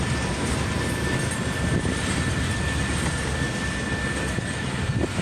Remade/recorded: recorded